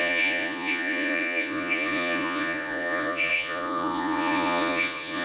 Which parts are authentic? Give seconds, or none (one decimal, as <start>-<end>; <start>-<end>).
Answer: none